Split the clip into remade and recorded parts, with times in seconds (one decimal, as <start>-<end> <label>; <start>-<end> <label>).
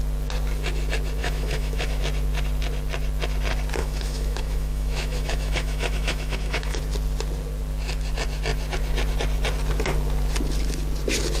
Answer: 0.0-1.2 recorded; 1.2-2.0 remade; 2.0-3.8 recorded; 3.8-6.8 remade; 6.8-11.4 recorded